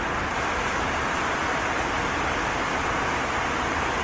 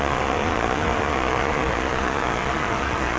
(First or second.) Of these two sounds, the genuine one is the first